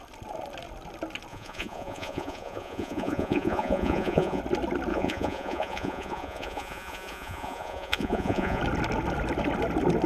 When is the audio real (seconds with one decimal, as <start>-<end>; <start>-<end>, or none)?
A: 0.0-1.3; 4.4-4.9; 8.6-10.1